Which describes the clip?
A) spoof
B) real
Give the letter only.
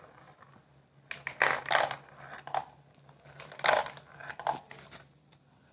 B